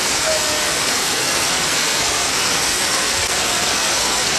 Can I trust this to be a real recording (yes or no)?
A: no